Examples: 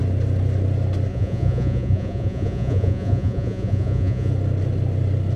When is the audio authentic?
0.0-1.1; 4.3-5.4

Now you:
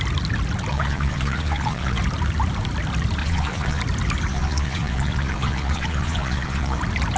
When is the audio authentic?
0.0-0.7; 2.0-3.2; 3.8-4.3; 6.8-7.2

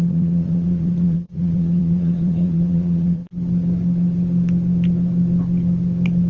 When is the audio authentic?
3.2-6.3

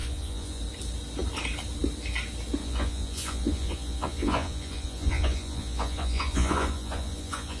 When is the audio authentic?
0.6-2.6